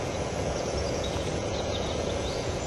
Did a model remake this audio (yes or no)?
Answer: yes